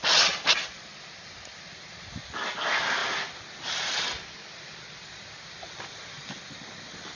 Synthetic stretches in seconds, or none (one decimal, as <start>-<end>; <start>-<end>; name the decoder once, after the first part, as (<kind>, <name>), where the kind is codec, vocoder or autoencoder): none